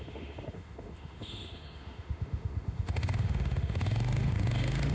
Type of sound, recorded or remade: remade